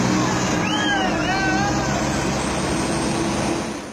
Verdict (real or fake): real